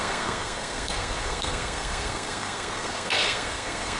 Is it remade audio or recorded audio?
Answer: remade